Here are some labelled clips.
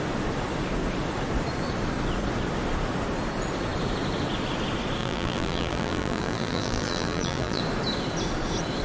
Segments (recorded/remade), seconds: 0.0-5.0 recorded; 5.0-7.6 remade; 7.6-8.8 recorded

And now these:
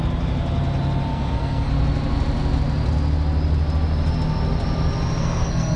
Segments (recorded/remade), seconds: 0.0-1.1 recorded; 1.1-1.7 remade; 1.7-5.2 recorded; 5.2-5.8 remade

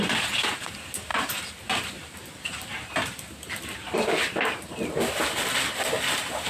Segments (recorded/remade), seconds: 0.0-6.5 recorded

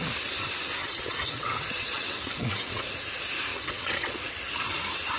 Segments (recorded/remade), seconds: 0.0-0.8 recorded; 0.8-2.9 remade; 2.9-3.5 recorded; 3.5-4.3 remade; 4.3-5.2 recorded

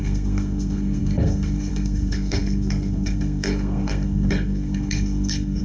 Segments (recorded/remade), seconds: 0.0-5.6 remade

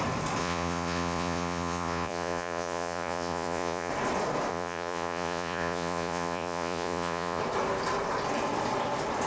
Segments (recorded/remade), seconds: 0.0-0.4 recorded; 0.4-3.9 remade; 3.9-4.5 recorded; 4.5-7.4 remade; 7.4-9.3 recorded

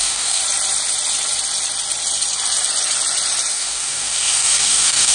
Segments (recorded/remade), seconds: 0.0-0.4 remade; 0.4-3.5 recorded; 3.5-5.1 remade

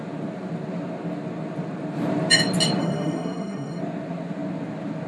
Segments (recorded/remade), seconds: 0.0-2.8 recorded; 2.8-3.8 remade; 3.8-5.1 recorded